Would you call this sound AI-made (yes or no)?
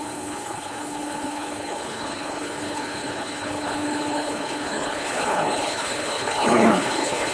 yes